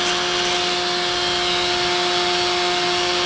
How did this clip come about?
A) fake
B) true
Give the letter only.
B